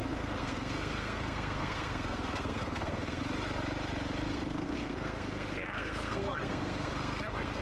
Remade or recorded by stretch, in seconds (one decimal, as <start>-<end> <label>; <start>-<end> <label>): 0.0-3.2 remade; 3.2-4.3 recorded; 4.3-7.6 remade